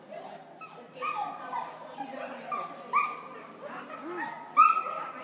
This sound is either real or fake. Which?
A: real